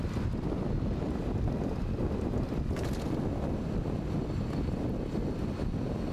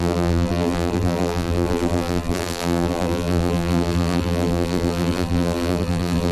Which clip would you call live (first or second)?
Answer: first